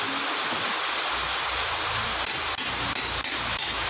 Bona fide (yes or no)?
yes